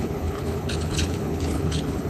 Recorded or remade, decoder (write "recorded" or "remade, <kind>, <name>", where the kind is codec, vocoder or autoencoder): remade, codec, HILCodec